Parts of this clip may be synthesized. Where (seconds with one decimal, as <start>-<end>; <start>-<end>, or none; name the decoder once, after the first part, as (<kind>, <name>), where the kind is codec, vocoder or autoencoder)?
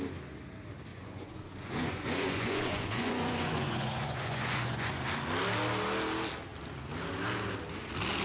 0.9-5.0 (vocoder, Vocos)